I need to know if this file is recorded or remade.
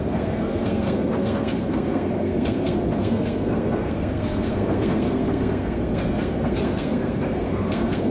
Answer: remade